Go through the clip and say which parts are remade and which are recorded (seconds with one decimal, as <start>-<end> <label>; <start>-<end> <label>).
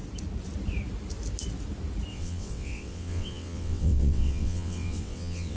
0.0-2.1 recorded; 2.1-5.6 remade